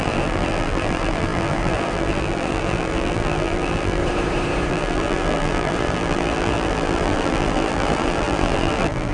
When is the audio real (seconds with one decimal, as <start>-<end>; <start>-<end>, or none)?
4.0-4.7